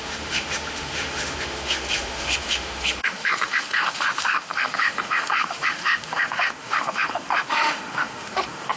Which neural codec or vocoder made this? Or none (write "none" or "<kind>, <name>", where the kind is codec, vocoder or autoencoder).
autoencoder, DAC-VAE